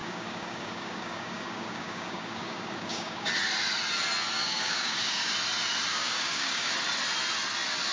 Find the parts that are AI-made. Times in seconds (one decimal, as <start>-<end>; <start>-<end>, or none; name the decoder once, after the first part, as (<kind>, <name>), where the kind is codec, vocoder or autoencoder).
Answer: 0.0-3.3 (codec, DAC); 4.4-5.3; 5.9-6.7